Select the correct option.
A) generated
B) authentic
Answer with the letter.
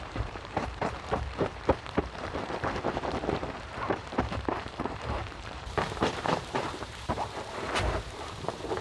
A